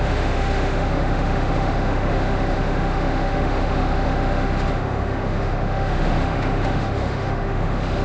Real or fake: fake